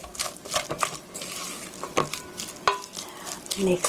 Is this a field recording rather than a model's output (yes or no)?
yes